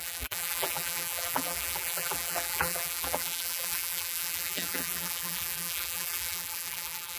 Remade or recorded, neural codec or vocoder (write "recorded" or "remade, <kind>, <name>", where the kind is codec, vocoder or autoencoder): remade, vocoder, BigVGAN v2